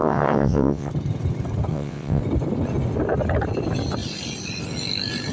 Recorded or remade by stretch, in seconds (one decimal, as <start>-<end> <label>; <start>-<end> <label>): 0.0-0.9 remade; 0.9-1.7 recorded; 1.7-2.2 remade; 2.2-5.3 recorded